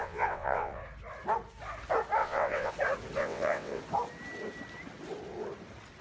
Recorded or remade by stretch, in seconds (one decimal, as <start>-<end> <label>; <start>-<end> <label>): 0.0-0.8 remade; 0.8-2.2 recorded; 2.2-2.7 remade; 2.7-3.2 recorded; 3.2-3.8 remade; 3.8-6.0 recorded